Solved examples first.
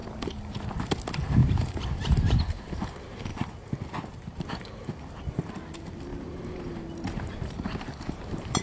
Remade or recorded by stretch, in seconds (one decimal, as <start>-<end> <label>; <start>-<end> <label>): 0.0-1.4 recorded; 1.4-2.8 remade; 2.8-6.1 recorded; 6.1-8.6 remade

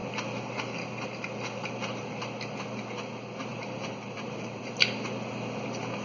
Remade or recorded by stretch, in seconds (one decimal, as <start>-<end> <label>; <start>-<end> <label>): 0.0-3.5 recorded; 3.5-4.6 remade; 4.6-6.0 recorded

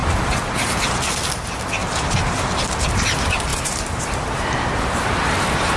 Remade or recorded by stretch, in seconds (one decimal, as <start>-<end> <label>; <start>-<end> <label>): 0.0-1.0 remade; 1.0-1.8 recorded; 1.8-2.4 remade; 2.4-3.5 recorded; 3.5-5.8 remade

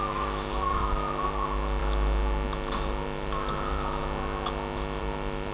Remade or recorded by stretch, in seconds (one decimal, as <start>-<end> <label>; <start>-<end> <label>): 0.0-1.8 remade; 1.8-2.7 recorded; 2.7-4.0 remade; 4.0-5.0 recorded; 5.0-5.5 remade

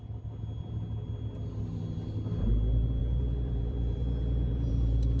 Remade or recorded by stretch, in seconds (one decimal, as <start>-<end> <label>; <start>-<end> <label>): 0.0-3.0 recorded; 3.0-5.2 remade